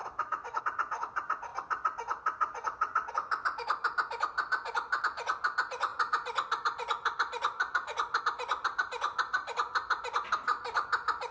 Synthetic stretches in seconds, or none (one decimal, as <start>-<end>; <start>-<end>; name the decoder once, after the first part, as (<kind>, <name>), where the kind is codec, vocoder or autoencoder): 0.0-0.6 (autoencoder, DAC-VAE)